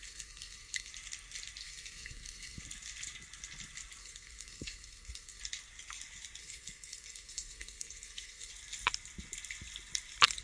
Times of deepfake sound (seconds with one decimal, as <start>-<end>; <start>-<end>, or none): 0.0-0.9; 1.6-2.6; 4.0-5.4; 6.4-8.5